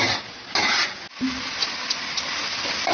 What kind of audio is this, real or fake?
real